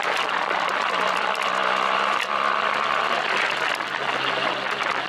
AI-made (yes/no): no